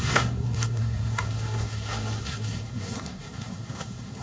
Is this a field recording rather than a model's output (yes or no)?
no